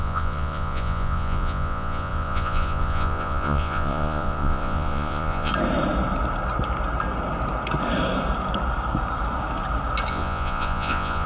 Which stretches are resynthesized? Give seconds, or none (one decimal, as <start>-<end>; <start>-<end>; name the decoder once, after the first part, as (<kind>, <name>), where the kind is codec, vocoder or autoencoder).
0.0-5.5 (vocoder, Vocos); 10.1-11.3